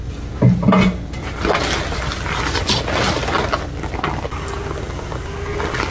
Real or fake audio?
real